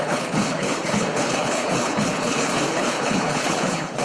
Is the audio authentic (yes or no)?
no